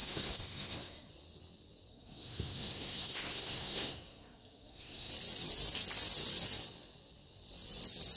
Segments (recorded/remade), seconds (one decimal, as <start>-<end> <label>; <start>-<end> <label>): 0.0-1.1 remade; 1.1-1.9 recorded; 1.9-5.1 remade; 5.1-8.2 recorded